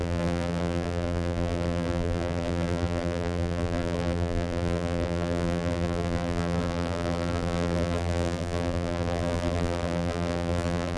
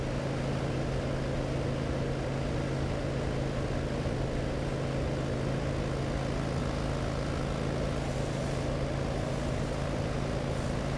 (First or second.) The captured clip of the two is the second